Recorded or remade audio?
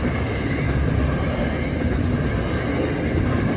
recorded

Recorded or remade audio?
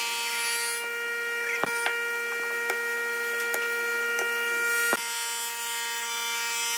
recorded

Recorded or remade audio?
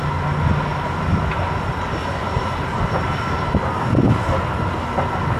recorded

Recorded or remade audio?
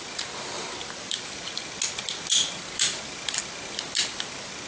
recorded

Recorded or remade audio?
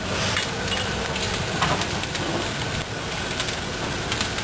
recorded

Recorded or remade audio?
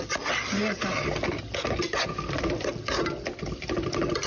recorded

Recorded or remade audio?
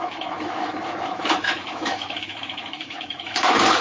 remade